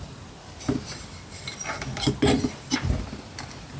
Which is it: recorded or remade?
recorded